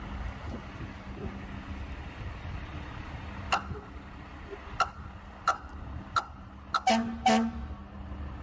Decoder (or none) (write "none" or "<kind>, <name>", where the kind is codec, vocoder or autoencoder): none